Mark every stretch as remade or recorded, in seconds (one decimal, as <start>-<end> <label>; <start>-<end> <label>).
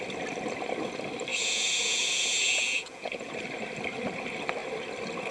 0.0-1.3 recorded; 1.3-3.3 remade; 3.3-5.3 recorded